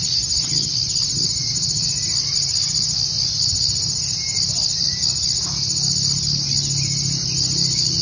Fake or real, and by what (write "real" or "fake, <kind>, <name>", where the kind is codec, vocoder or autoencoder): real